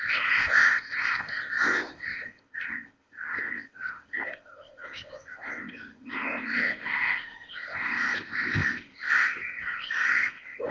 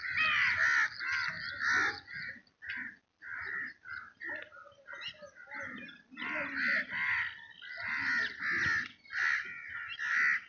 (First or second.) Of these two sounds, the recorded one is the second